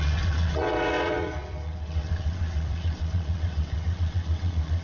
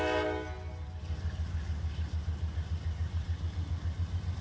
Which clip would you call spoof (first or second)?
first